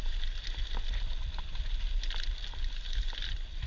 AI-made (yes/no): no